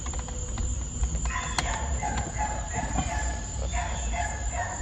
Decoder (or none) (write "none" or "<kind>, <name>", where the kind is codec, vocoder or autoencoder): vocoder, BigVGAN v2